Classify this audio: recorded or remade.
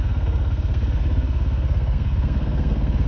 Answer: remade